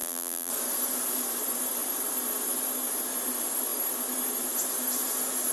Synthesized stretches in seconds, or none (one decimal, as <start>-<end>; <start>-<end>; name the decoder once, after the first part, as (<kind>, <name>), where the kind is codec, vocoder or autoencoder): 0.0-0.5 (vocoder, BigVGAN v2)